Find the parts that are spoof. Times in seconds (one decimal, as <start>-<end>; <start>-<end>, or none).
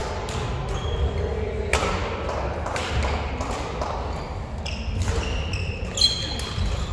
none